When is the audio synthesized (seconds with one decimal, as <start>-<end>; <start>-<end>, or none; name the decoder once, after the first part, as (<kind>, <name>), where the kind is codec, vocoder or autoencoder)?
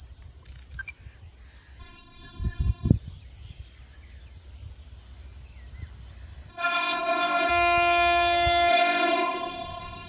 1.8-2.9 (codec, ZipCodec); 6.5-7.5; 8.7-10.1